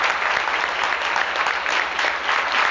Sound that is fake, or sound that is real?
real